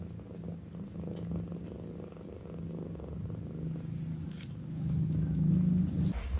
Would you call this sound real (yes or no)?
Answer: yes